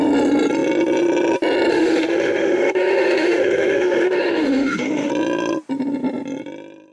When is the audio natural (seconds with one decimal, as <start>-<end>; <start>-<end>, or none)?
0.0-1.7; 5.1-6.9